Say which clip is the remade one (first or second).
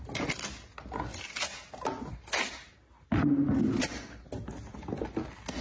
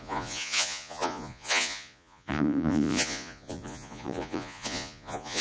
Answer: second